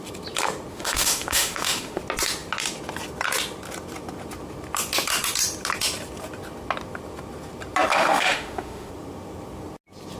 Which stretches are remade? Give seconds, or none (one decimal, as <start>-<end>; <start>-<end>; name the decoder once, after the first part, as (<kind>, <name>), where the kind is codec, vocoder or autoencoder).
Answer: 0.7-2.0 (autoencoder, DAC-VAE); 7.9-8.9